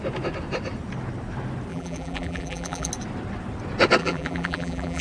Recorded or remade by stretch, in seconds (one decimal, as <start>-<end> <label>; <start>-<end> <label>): 0.0-1.7 recorded; 1.7-2.9 remade; 2.9-4.0 recorded; 4.0-5.0 remade